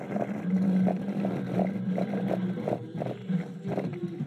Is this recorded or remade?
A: recorded